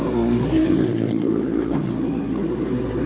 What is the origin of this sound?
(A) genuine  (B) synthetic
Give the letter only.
B